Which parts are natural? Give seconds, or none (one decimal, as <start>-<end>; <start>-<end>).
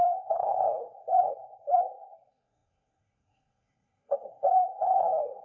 none